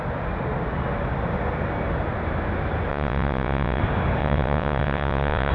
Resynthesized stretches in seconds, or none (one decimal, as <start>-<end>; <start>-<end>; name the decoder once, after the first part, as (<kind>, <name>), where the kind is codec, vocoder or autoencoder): 2.9-3.8 (vocoder, WaveNeXt); 4.2-5.5